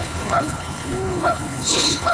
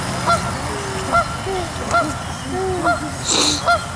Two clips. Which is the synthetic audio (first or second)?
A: first